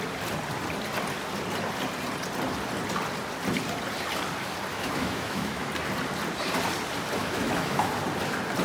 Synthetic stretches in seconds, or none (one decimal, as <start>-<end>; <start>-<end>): 4.7-5.7; 7.2-7.9